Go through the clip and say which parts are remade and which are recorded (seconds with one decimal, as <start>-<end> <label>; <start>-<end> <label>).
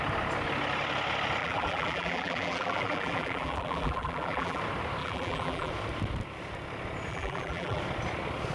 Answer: 0.0-1.4 recorded; 1.4-4.6 remade; 4.6-5.0 recorded; 5.0-5.7 remade; 5.7-7.1 recorded; 7.1-7.8 remade; 7.8-8.5 recorded